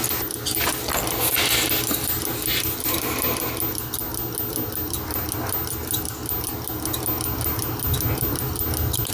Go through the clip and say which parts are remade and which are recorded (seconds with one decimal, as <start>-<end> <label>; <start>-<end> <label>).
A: 0.0-9.1 recorded